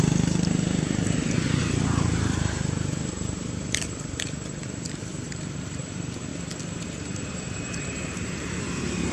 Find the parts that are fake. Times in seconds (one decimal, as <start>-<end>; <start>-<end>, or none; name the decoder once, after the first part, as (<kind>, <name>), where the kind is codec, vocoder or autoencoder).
0.0-6.3 (vocoder, BigVGAN v2); 6.8-9.1